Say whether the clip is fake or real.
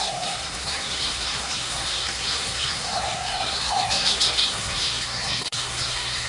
fake